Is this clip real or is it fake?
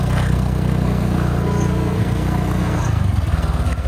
fake